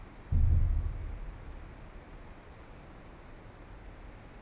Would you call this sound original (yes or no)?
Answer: yes